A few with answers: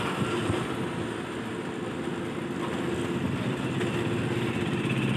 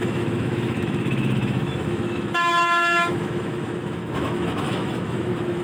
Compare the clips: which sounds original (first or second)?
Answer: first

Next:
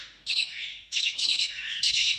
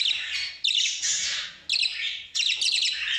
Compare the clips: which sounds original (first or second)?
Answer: second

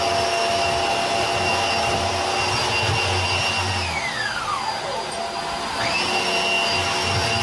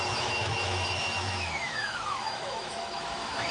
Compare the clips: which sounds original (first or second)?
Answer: first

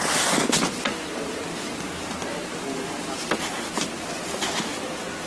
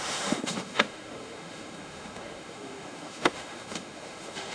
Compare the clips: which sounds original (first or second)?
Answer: first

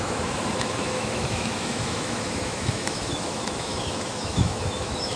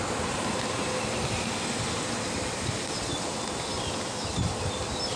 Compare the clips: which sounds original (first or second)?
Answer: second